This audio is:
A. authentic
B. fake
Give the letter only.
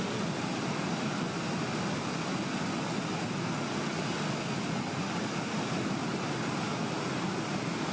A